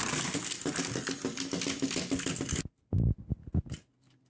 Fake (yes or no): no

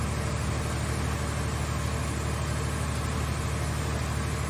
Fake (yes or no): no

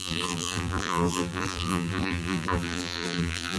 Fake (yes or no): yes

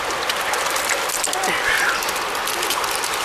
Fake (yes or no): no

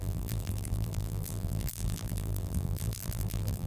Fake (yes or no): yes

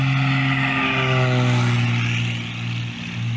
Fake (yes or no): no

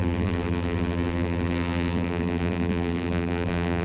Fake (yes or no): yes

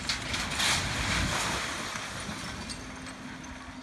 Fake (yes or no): no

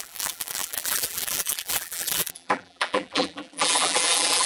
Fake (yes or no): yes